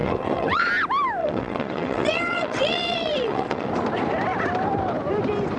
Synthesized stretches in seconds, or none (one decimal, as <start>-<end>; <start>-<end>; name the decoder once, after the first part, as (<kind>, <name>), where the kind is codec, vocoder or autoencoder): 0.0-0.7 (vocoder, WaveNeXt); 1.2-3.7